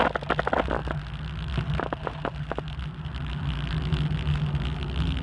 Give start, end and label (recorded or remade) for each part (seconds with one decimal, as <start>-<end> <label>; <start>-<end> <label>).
0.0-5.2 recorded